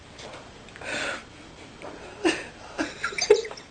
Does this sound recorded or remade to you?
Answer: recorded